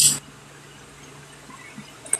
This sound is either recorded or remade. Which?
recorded